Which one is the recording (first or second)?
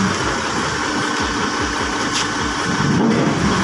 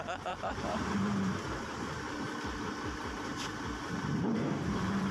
first